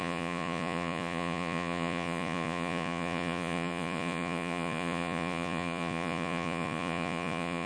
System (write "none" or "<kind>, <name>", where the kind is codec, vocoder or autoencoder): vocoder, Vocos